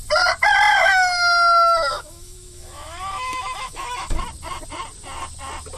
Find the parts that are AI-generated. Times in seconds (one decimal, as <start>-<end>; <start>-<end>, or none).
0.7-4.2